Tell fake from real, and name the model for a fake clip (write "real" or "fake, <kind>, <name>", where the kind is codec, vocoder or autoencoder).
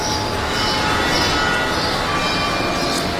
real